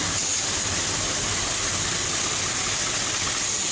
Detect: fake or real real